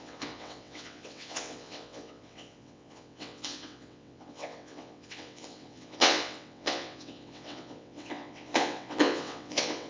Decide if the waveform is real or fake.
fake